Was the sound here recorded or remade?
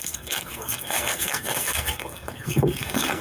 remade